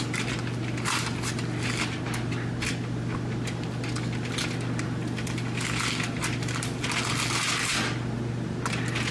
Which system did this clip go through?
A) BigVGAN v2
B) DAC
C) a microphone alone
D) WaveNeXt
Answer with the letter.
C